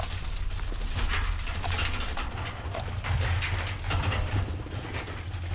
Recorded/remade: recorded